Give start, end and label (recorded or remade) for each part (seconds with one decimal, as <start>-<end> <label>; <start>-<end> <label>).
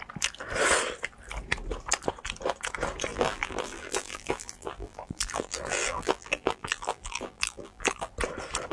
0.0-3.1 recorded; 3.1-8.1 remade; 8.1-8.7 recorded